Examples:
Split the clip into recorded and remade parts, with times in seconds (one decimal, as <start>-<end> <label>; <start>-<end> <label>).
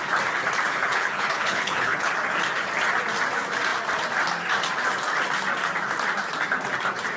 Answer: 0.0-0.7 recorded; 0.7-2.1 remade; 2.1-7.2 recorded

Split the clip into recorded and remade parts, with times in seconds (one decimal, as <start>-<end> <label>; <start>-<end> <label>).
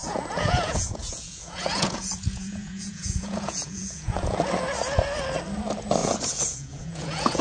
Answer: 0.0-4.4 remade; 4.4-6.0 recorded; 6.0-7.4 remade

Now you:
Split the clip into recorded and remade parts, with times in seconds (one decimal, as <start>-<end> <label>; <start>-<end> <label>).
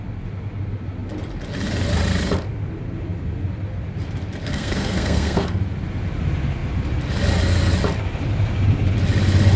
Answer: 0.0-4.4 recorded; 4.4-5.6 remade; 5.6-9.6 recorded